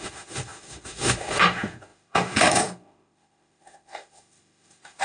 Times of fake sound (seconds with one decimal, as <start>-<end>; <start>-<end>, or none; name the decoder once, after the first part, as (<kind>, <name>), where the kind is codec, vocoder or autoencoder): 0.0-5.0 (autoencoder, DAC-VAE)